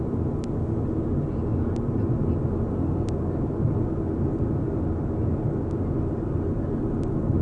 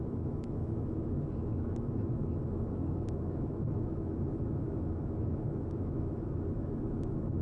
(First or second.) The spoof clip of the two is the second